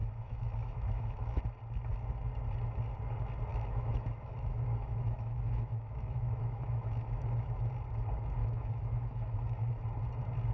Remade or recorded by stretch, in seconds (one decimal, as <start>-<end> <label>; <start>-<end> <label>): 0.0-1.4 remade; 1.4-3.5 recorded; 3.5-7.7 remade; 7.7-8.4 recorded; 8.4-9.8 remade; 9.8-10.5 recorded